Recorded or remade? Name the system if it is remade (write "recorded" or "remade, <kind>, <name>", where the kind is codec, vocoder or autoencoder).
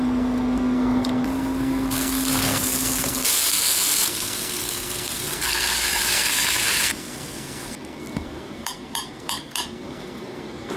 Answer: remade, codec, SNAC